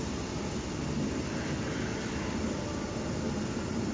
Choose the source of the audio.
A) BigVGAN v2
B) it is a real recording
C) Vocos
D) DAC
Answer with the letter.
A